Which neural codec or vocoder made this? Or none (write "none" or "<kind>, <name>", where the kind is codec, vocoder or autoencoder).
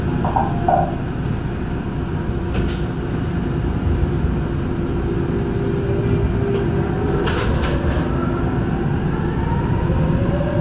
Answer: none